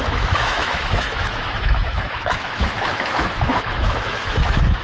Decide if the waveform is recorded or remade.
remade